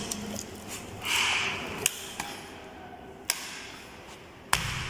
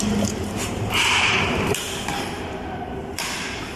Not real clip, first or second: second